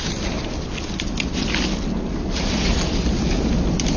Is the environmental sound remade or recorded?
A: recorded